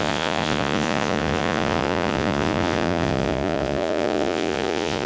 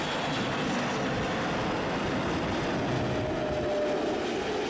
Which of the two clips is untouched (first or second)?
second